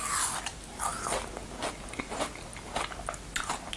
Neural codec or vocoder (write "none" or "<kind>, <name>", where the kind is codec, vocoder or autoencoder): none